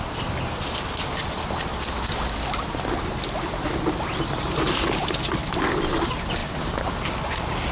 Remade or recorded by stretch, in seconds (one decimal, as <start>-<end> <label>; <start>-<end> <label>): 0.0-7.7 recorded